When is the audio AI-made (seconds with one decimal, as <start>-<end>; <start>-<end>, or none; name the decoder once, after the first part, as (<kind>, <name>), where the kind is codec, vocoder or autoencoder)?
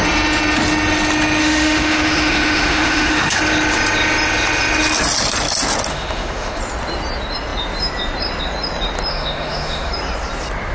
1.4-3.4 (autoencoder, DAC-VAE); 5.9-6.6; 9.1-9.9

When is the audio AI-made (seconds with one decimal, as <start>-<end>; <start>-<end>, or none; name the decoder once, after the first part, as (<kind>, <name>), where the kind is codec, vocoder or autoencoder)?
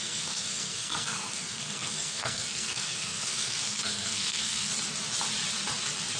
0.0-4.7 (codec, SNAC)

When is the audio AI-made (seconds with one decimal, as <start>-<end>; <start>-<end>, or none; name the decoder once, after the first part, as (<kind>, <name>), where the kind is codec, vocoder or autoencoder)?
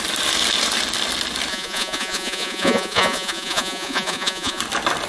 1.5-4.6 (vocoder, Vocos)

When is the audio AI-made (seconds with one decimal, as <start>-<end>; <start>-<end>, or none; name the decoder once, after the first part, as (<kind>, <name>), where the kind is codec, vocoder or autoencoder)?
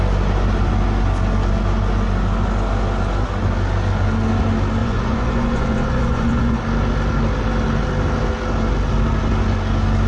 4.8-6.6 (vocoder, Vocos)